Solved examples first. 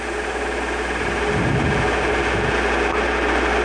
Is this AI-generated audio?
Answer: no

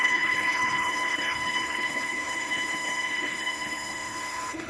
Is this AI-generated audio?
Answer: yes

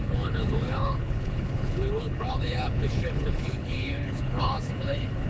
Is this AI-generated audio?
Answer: yes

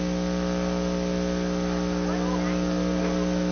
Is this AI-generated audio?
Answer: no